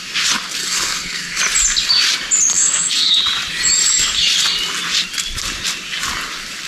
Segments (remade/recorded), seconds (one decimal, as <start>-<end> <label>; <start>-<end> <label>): 0.0-0.6 recorded; 0.6-1.4 remade; 1.4-2.5 recorded; 2.5-3.2 remade; 3.2-6.7 recorded

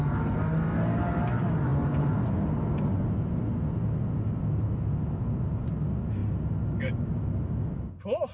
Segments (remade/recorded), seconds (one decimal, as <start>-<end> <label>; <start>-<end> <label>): 0.0-8.3 recorded

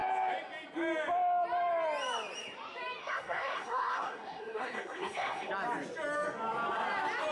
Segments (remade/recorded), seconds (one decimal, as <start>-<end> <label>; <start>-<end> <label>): 0.0-3.0 recorded; 3.0-5.5 remade; 5.5-7.3 recorded

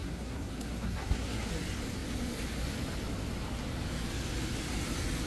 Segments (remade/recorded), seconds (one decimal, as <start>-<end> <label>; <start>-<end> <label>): 0.0-1.5 remade; 1.5-5.3 recorded